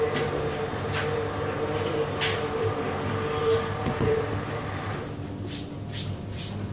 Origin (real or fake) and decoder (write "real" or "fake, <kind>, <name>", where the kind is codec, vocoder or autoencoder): real